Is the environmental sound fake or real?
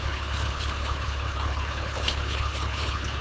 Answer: fake